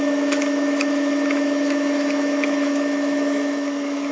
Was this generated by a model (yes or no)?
yes